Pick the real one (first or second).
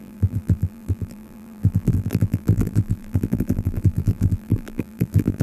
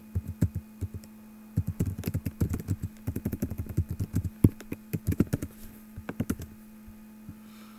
second